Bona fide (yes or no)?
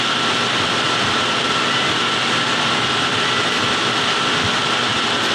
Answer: yes